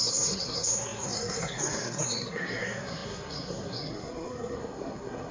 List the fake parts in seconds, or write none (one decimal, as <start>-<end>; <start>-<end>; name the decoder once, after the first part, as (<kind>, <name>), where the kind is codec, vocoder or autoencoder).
0.0-5.3 (codec, SNAC)